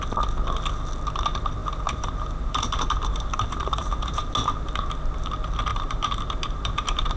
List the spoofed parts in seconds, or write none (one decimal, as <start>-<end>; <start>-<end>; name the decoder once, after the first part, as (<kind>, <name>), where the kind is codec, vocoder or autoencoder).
1.6-4.3 (vocoder, BigVGAN v2); 5.7-7.2